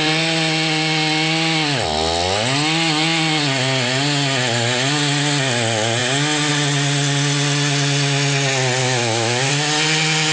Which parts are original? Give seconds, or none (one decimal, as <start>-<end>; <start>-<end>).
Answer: 0.0-8.8; 9.5-10.3